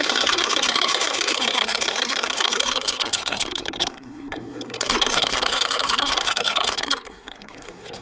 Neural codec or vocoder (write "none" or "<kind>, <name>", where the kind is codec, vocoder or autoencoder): codec, SNAC